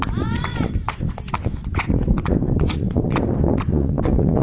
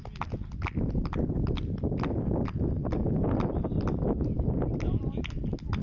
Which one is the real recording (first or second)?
second